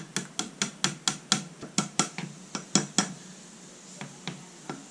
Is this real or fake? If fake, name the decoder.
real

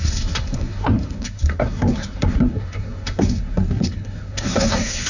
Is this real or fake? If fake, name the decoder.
fake, codec, SNAC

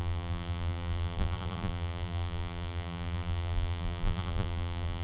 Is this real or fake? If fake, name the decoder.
fake, vocoder, BigVGAN v2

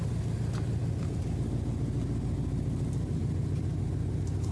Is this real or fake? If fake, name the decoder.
real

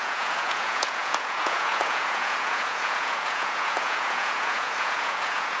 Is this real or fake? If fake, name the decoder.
fake, vocoder, Vocos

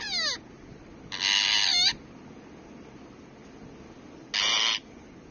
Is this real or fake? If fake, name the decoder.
real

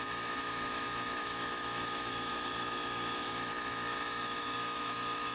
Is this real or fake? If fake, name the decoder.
fake, autoencoder, DAC-VAE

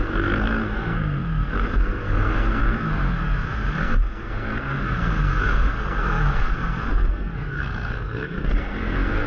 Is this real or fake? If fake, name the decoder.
fake, codec, SNAC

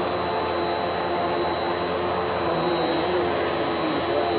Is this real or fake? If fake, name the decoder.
real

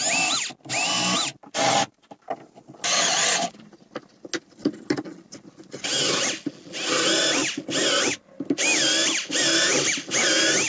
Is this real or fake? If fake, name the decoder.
real